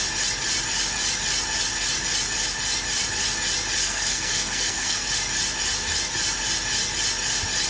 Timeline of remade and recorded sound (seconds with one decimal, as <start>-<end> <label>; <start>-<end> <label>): 0.0-3.8 recorded; 3.8-5.1 remade; 5.1-7.7 recorded